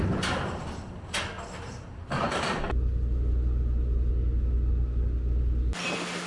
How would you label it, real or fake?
real